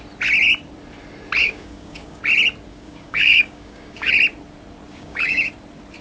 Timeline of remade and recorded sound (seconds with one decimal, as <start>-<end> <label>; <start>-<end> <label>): 0.0-1.4 recorded; 1.4-2.2 remade; 2.2-2.7 recorded; 2.7-4.1 remade; 4.1-4.9 recorded; 4.9-5.5 remade; 5.5-6.0 recorded